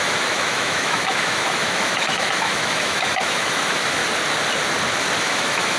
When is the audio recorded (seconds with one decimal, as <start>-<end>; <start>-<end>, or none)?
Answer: 4.0-5.2